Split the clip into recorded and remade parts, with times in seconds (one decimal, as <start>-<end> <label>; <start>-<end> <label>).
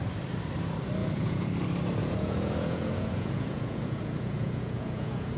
0.0-1.0 recorded; 1.0-1.5 remade; 1.5-2.0 recorded; 2.0-5.4 remade